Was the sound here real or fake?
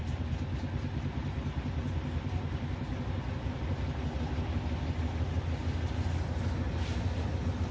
real